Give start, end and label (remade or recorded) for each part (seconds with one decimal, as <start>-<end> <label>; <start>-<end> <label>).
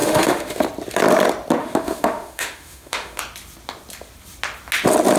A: 0.0-0.6 remade; 0.6-1.6 recorded; 1.6-3.2 remade; 3.2-5.2 recorded